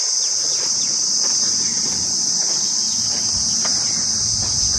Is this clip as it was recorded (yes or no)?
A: yes